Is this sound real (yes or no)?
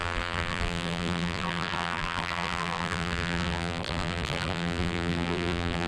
no